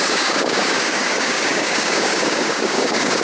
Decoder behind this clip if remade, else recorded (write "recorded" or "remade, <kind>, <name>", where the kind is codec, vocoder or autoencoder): remade, codec, DAC